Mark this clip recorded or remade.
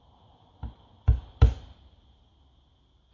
recorded